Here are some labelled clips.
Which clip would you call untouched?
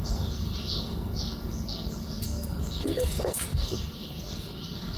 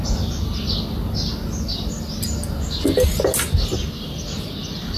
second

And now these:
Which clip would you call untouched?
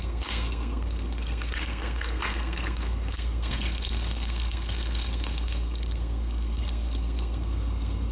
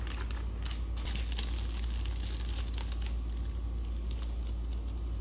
second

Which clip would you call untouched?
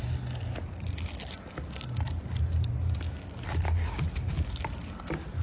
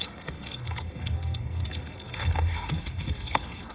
first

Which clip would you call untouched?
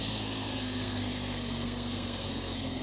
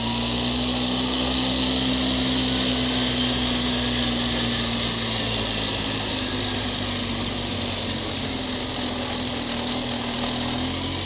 second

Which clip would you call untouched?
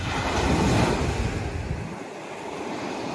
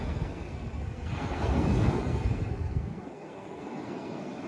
first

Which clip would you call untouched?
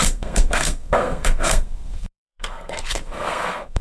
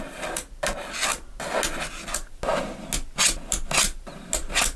second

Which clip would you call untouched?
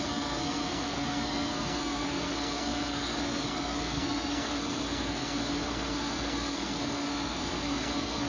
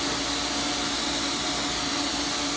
second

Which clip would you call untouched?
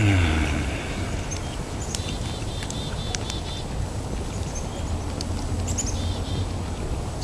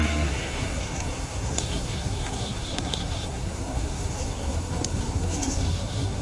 first